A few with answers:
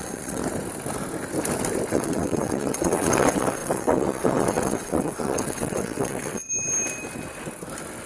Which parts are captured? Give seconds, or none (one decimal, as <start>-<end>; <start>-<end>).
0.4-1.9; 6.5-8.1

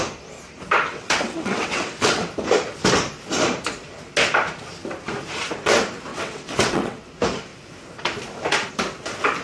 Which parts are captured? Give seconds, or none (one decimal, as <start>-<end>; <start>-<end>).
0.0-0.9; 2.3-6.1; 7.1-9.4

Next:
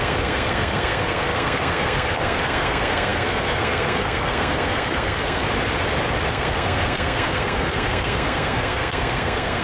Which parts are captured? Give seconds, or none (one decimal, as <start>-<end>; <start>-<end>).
5.4-6.3